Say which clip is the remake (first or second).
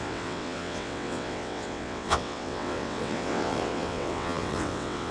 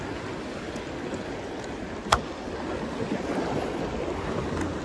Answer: first